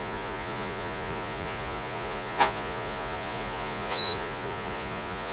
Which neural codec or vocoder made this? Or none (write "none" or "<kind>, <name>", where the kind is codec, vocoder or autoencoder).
vocoder, Vocos